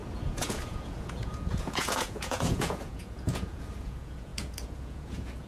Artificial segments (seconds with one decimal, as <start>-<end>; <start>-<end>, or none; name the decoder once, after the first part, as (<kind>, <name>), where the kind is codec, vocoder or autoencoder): 0.0-5.5 (vocoder, Vocos)